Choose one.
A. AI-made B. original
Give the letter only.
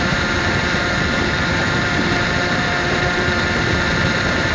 A